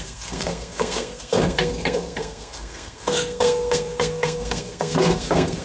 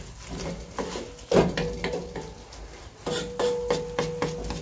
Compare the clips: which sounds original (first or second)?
second